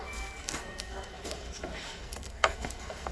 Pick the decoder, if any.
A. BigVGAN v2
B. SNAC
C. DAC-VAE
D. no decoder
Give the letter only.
B